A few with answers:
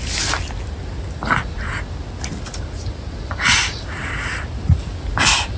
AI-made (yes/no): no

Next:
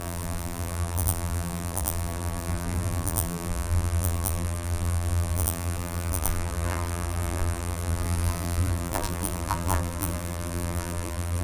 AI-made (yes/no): yes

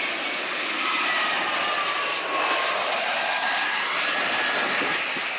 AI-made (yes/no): no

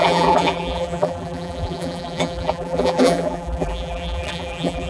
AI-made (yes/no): yes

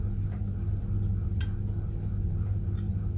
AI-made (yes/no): no